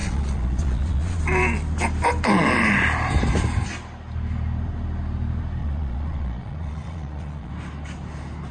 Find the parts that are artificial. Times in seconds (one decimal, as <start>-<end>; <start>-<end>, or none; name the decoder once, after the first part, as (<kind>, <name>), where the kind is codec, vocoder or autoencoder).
0.0-1.2 (vocoder, Vocos); 5.6-7.5

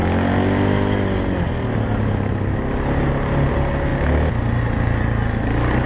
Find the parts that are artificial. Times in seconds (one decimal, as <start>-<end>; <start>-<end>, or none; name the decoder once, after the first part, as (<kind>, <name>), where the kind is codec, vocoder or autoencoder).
none

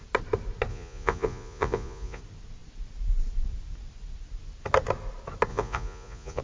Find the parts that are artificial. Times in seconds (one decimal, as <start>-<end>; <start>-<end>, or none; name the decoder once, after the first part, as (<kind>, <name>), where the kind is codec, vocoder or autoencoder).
0.7-2.2 (vocoder, Vocos); 5.5-6.4